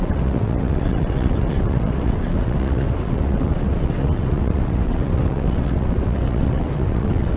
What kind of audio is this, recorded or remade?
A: remade